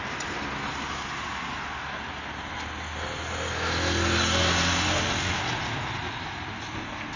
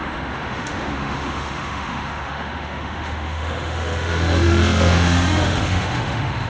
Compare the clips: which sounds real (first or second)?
first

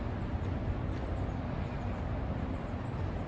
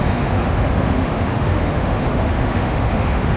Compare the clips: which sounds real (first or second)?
first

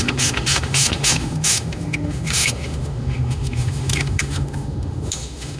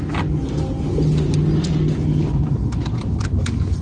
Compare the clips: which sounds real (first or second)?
second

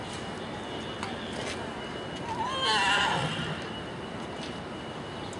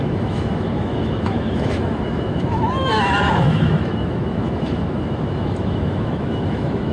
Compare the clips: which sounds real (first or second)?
first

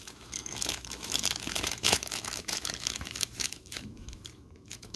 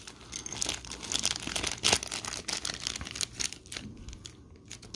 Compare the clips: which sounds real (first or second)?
second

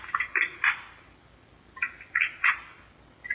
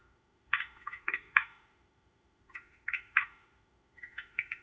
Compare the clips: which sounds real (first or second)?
first